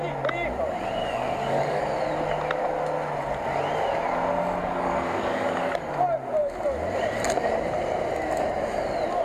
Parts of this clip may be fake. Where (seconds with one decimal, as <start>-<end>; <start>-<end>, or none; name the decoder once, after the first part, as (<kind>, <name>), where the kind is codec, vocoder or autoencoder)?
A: 1.0-1.8 (codec, DAC); 4.6-5.9